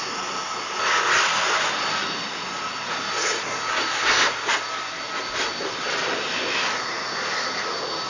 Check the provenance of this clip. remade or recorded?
recorded